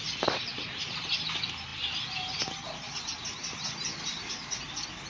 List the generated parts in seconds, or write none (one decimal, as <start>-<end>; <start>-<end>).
0.5-1.0